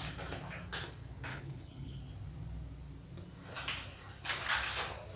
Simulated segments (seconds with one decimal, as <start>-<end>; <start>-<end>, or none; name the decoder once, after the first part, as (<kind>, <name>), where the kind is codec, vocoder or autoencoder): 1.3-2.0 (codec, HILCodec)